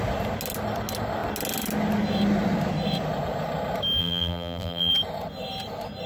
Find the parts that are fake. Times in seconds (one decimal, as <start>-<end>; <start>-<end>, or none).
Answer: 4.0-4.9